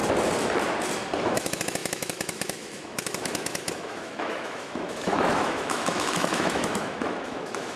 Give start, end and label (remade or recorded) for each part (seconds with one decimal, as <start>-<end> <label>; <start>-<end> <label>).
0.0-1.2 recorded; 1.2-7.8 remade